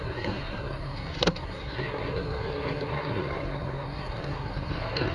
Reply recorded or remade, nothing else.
remade